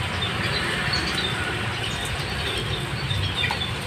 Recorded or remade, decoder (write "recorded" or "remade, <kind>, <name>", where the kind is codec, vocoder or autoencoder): recorded